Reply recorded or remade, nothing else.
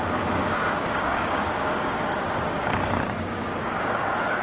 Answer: remade